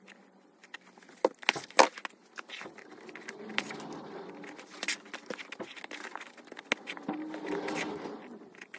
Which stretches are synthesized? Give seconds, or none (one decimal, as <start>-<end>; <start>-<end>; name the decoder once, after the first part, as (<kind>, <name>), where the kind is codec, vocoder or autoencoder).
none